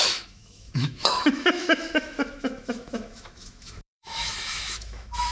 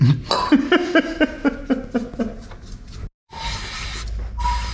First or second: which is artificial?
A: first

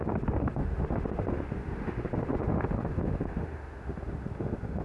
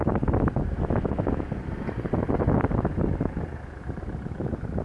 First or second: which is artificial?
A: first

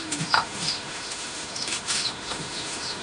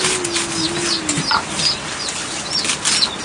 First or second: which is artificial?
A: first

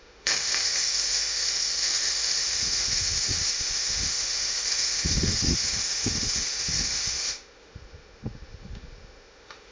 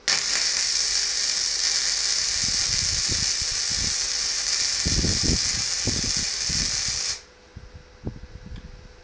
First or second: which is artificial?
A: first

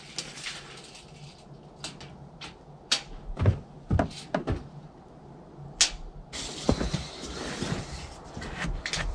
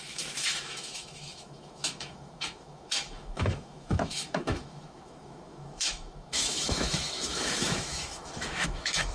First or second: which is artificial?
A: second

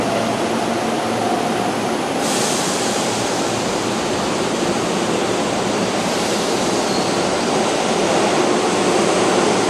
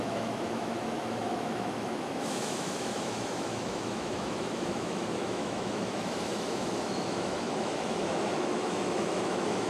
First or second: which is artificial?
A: second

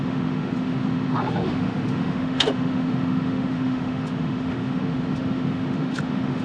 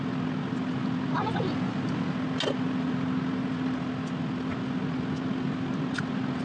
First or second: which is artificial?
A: first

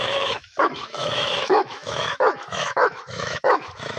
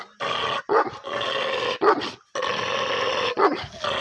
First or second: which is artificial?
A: first